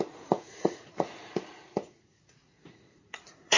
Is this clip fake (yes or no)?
yes